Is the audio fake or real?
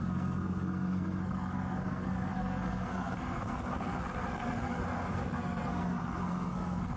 fake